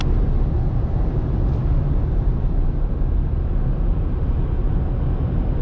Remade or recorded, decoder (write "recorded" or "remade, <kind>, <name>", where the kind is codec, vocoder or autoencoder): recorded